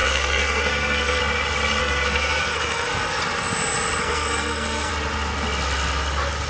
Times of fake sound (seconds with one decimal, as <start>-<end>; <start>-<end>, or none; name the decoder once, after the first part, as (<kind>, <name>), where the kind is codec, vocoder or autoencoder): 0.0-1.2 (codec, SNAC); 1.8-3.2; 4.0-4.9